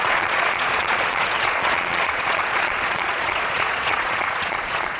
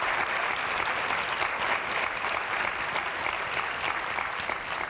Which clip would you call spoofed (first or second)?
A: first